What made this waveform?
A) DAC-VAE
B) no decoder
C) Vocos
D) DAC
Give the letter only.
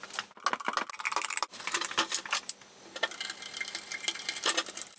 B